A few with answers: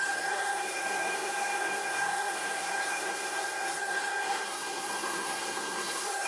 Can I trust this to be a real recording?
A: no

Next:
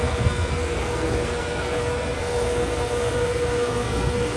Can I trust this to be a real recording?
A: no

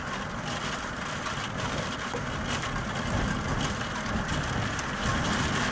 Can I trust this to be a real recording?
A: yes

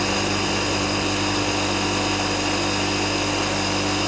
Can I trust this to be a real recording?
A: yes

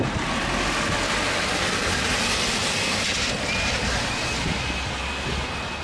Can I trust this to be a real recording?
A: yes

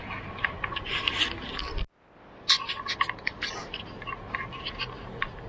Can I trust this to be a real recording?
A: yes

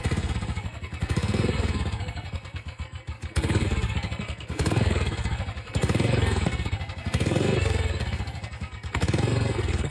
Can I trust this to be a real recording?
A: no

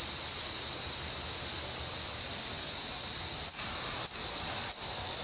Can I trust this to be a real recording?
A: yes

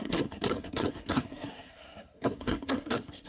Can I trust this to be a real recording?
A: no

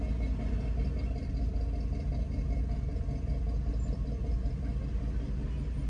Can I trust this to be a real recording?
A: yes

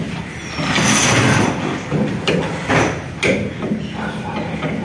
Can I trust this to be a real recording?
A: yes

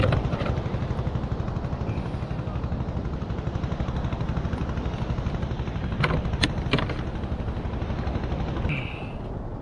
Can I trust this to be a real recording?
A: yes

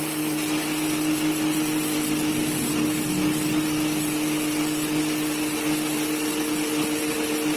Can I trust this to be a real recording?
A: yes